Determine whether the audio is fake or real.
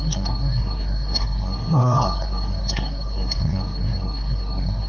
fake